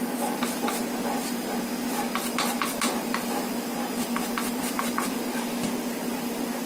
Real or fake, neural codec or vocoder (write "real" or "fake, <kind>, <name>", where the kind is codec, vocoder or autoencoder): real